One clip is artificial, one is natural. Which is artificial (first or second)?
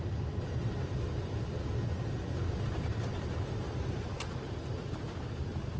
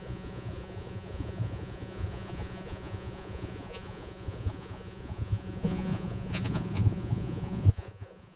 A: second